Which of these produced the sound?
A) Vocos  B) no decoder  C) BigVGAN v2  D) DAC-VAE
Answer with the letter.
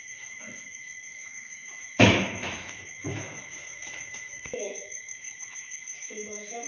D